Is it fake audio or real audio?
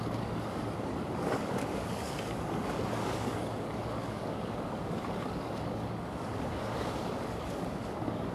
fake